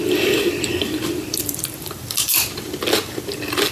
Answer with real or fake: fake